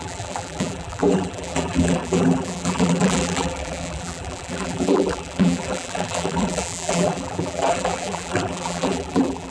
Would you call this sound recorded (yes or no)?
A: no